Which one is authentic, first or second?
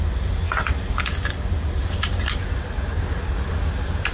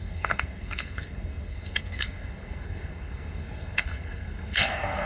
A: first